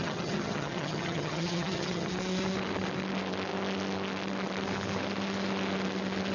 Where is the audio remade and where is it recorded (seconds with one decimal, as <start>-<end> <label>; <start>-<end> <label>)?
0.0-2.1 remade; 2.1-6.3 recorded